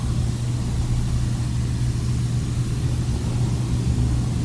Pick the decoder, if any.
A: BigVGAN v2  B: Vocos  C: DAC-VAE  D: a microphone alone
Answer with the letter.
D